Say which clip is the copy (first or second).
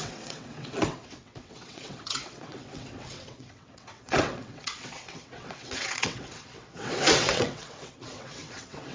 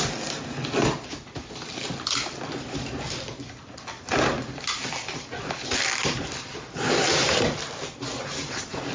first